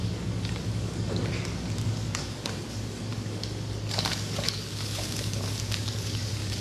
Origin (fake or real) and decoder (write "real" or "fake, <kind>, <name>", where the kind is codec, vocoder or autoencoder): fake, codec, DAC